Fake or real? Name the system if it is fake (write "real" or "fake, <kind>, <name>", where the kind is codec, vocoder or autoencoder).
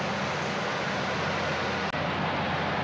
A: real